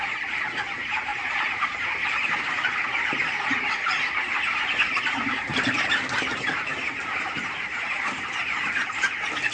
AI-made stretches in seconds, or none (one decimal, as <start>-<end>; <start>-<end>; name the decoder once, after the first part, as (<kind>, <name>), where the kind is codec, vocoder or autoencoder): none